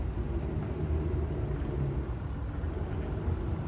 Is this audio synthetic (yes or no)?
no